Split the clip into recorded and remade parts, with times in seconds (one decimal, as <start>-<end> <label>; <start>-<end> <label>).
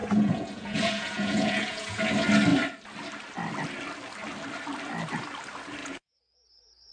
0.0-2.0 remade; 2.0-5.8 recorded; 5.8-6.9 remade